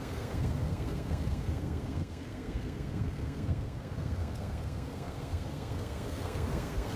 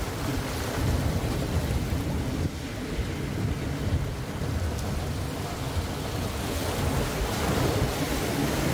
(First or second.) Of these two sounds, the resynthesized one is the first